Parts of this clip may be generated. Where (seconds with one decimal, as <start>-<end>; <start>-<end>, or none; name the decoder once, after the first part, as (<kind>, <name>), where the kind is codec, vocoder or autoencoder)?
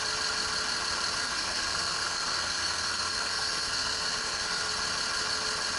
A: 1.2-4.7 (codec, SNAC)